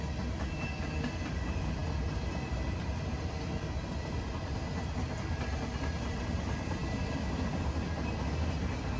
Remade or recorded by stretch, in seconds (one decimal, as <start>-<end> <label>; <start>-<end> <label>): 0.0-9.0 recorded